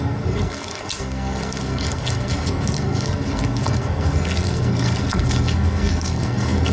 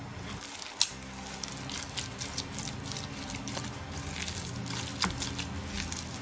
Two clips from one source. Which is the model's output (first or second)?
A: first